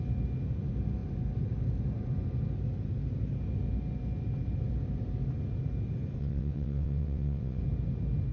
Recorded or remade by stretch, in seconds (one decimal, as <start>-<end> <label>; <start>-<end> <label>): 0.0-6.2 recorded; 6.2-7.6 remade; 7.6-8.3 recorded